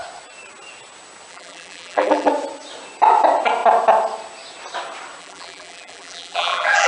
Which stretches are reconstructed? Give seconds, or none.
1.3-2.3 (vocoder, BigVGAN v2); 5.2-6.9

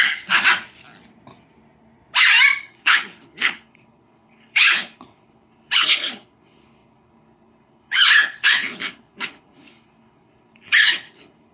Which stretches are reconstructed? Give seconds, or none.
0.0-0.4 (codec, HILCodec); 2.6-11.5

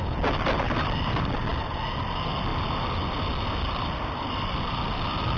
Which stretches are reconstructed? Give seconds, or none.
none

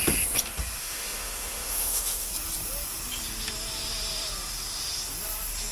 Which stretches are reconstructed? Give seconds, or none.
0.8-2.3 (autoencoder, DAC-VAE)